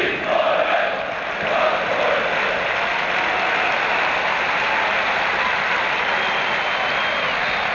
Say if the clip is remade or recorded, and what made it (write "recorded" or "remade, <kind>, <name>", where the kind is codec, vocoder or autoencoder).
recorded